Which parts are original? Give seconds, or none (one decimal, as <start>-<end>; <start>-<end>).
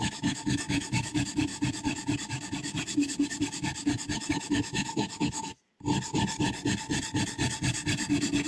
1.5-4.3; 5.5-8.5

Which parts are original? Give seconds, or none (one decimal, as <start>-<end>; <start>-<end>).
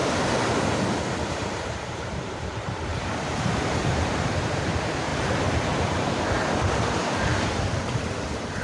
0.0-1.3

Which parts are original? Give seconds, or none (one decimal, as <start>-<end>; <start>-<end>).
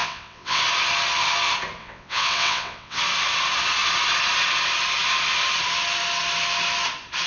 0.6-1.8; 3.0-7.3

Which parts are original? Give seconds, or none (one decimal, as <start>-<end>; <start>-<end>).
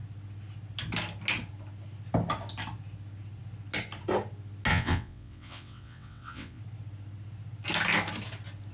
0.0-4.7; 6.6-8.7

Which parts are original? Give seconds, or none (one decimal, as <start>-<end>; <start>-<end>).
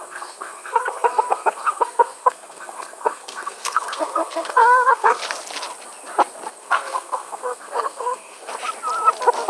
5.2-6.5; 8.5-9.5